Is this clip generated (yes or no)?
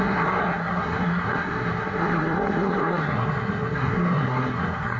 yes